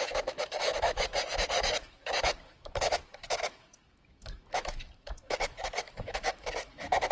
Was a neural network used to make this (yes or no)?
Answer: yes